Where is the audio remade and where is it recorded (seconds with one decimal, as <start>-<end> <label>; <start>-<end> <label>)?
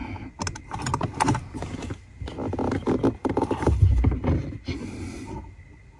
0.0-3.2 recorded; 3.2-4.0 remade; 4.0-6.0 recorded